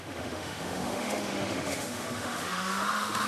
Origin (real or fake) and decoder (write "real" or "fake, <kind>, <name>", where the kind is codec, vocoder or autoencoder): fake, autoencoder, DAC-VAE